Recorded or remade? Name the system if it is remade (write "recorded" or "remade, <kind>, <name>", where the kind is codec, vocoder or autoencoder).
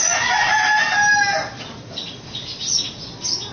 recorded